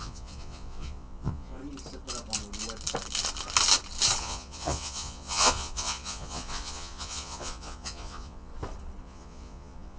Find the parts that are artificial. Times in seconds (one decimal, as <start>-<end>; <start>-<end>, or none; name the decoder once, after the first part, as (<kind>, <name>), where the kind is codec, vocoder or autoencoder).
0.0-1.6 (vocoder, Vocos); 4.2-8.5; 9.0-10.0